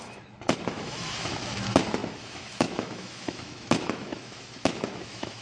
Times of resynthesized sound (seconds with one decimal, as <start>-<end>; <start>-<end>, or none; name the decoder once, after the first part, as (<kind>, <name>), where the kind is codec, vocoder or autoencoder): 0.0-5.4 (autoencoder, DAC-VAE)